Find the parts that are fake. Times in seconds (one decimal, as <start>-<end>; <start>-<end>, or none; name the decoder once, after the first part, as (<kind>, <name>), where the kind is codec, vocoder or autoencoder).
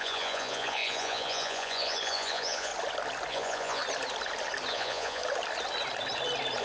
0.0-2.7 (vocoder, Vocos); 3.3-3.8; 4.7-5.2